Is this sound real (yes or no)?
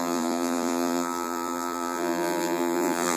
no